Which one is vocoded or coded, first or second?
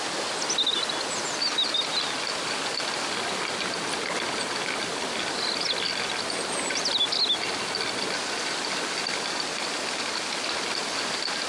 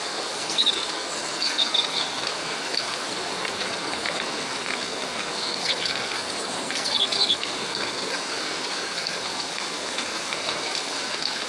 second